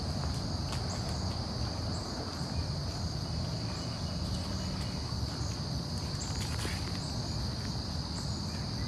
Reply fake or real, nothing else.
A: real